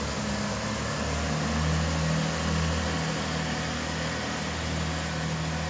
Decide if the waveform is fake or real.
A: real